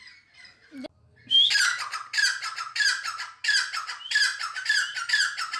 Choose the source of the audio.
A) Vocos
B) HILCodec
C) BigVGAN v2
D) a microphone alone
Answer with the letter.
D